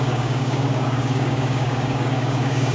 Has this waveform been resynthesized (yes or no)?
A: yes